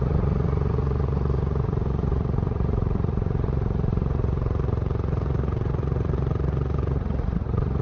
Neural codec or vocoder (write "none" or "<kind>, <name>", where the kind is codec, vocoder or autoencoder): vocoder, Vocos